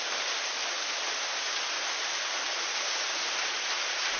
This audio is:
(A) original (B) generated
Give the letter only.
A